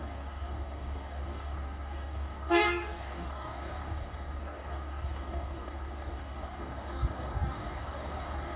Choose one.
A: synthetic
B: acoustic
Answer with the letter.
A